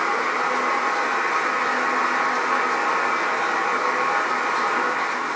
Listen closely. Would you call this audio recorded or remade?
recorded